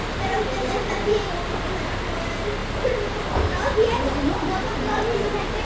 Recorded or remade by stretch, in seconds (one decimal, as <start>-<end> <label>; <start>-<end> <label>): 0.0-5.6 recorded